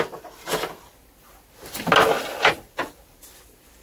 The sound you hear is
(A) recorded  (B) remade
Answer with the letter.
A